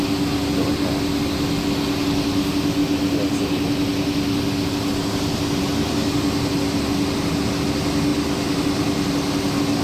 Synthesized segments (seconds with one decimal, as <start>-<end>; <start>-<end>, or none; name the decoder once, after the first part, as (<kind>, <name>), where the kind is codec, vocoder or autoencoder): none